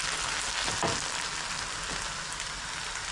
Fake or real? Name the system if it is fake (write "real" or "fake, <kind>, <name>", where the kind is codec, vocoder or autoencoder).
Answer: real